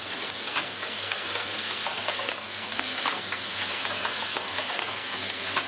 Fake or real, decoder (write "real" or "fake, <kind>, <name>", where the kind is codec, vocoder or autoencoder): fake, codec, SNAC